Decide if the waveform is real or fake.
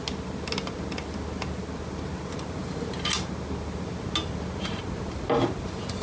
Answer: real